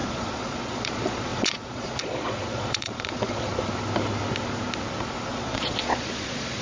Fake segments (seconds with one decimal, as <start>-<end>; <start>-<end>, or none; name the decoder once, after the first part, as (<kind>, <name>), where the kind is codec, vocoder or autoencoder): 0.0-3.5 (vocoder, Vocos); 5.3-6.6